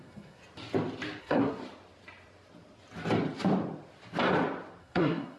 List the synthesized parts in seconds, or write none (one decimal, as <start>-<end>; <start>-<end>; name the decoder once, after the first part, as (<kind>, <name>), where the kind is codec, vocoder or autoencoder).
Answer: 0.0-0.4 (codec, SNAC); 1.2-1.6; 4.8-5.4